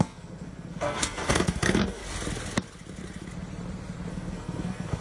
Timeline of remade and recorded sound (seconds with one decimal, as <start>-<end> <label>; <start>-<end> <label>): 0.0-2.0 remade; 2.0-4.1 recorded; 4.1-5.0 remade